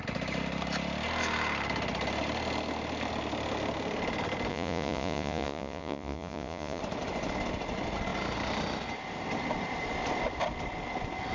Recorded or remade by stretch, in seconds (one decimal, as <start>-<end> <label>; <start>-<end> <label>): 0.0-4.5 recorded; 4.5-6.8 remade; 6.8-11.3 recorded

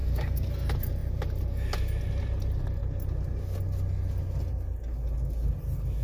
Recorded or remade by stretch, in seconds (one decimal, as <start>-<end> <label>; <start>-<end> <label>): 0.0-0.5 remade; 0.5-6.0 recorded